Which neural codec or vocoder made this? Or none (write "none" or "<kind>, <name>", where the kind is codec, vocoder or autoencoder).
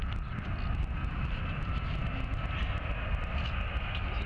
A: none